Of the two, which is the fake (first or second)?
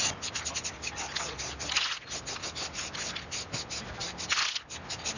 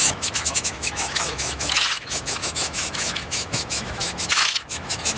second